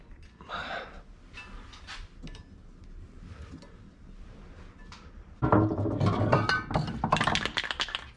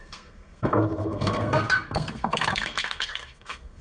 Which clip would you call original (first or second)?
first